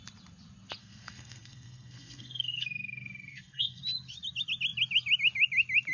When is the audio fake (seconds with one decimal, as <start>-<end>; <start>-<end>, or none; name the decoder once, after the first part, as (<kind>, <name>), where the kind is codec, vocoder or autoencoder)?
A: 0.8-3.8 (codec, SNAC)